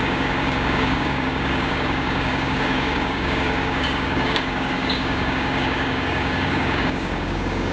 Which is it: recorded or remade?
remade